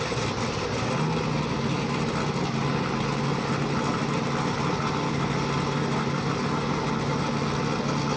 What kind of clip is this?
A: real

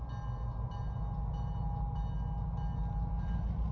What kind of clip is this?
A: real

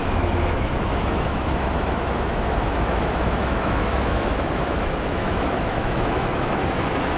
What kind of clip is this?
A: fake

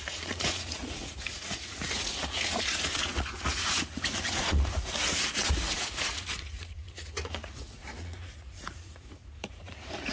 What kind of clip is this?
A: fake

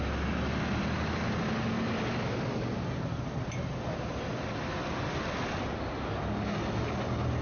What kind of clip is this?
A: real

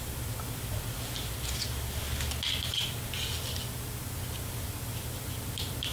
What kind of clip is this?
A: real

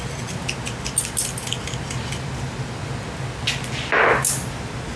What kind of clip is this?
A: real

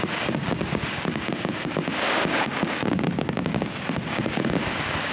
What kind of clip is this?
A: fake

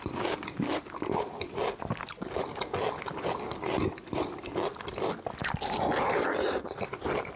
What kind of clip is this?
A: real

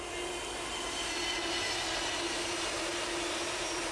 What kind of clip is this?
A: real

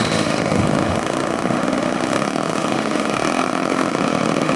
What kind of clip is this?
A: fake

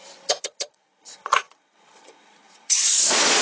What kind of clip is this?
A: fake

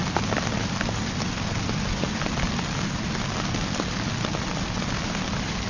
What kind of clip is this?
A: real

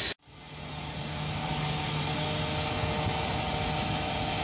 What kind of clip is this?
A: real